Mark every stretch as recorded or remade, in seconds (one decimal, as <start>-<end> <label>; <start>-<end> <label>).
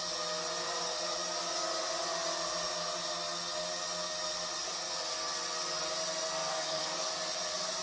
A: 0.0-6.4 recorded; 6.4-7.1 remade; 7.1-7.8 recorded